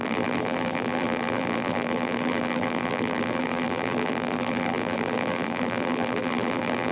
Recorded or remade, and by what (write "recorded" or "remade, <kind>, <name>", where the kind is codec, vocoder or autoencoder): remade, vocoder, BigVGAN v2